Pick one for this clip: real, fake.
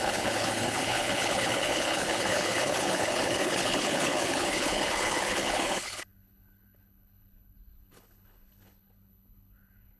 fake